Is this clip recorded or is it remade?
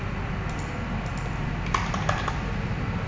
recorded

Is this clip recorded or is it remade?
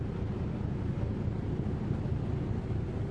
recorded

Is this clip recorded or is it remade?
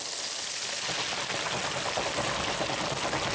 recorded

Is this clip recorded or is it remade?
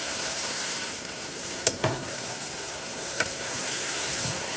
remade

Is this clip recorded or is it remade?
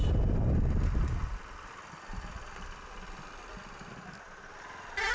recorded